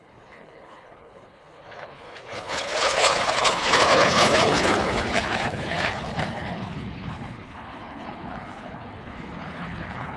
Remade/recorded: remade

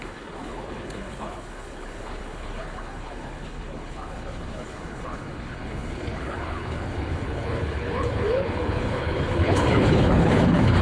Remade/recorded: remade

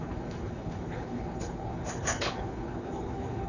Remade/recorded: remade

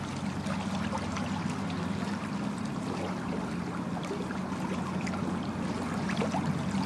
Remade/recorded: recorded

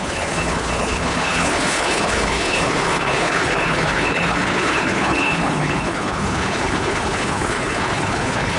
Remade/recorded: remade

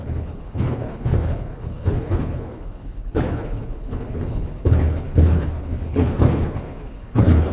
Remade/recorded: remade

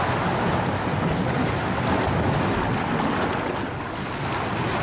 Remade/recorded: recorded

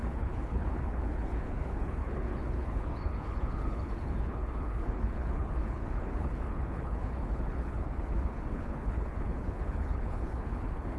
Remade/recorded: remade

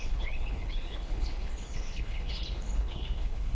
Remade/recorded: remade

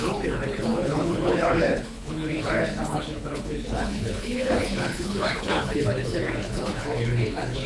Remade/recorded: remade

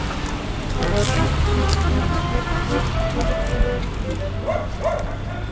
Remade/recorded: recorded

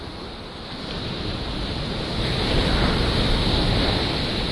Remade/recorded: recorded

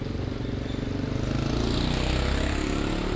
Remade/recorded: recorded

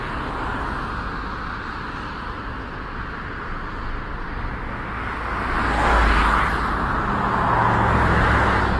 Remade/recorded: recorded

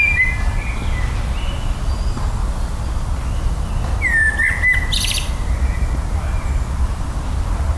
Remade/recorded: recorded